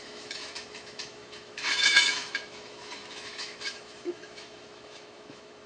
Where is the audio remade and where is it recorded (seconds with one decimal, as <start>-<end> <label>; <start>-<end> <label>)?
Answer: 0.0-5.7 remade